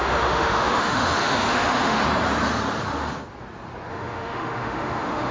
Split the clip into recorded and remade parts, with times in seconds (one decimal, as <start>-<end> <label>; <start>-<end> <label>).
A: 0.0-2.0 remade; 2.0-3.9 recorded; 3.9-5.3 remade